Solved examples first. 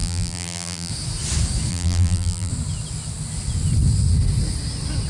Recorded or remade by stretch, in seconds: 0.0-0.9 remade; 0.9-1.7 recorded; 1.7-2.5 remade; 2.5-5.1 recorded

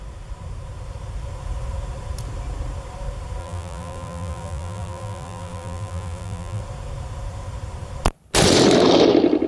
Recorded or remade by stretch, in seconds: 0.0-3.4 recorded; 3.4-6.6 remade; 6.6-9.5 recorded

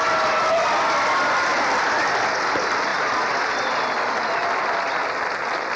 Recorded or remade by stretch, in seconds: 0.0-1.5 recorded; 1.5-2.0 remade; 2.0-2.9 recorded; 2.9-3.5 remade; 3.5-5.8 recorded

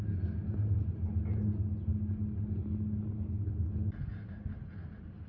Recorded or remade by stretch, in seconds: 0.0-5.3 recorded